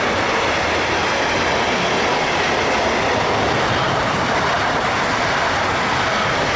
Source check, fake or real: real